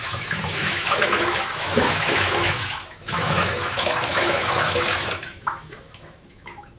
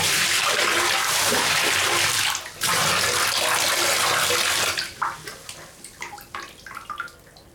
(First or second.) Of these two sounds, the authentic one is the second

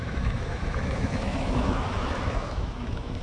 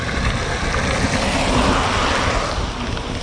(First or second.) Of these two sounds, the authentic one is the second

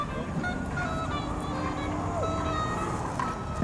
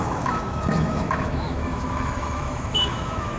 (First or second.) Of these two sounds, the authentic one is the first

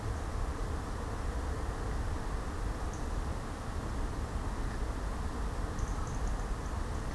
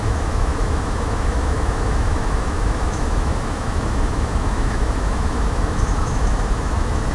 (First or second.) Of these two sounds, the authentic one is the first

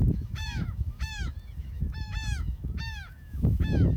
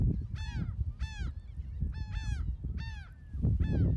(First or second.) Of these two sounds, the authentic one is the second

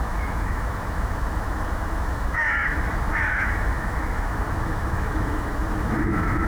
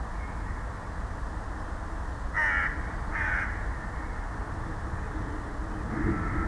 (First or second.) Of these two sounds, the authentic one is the second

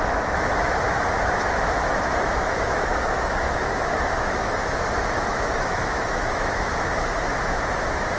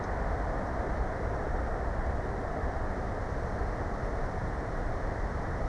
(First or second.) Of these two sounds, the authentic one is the second